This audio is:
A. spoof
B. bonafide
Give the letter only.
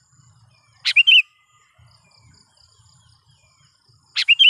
B